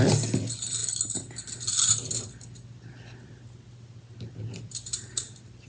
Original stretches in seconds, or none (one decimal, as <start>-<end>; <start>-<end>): 0.0-5.7